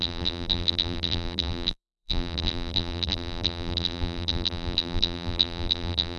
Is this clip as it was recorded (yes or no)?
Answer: no